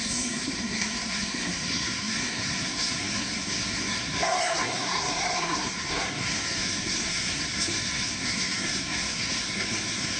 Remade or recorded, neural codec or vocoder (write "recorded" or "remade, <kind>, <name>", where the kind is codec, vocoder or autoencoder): remade, codec, SNAC